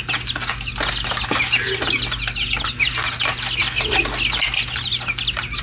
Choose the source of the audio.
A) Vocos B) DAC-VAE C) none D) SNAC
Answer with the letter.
C